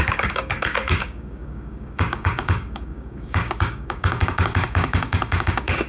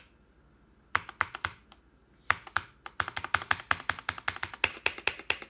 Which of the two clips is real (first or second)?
second